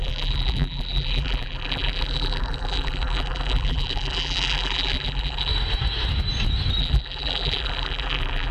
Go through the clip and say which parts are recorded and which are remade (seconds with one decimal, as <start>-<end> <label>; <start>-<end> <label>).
0.0-5.5 remade; 5.5-6.8 recorded; 6.8-8.5 remade